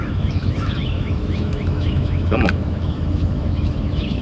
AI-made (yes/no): yes